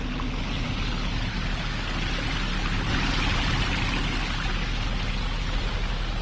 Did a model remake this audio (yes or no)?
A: no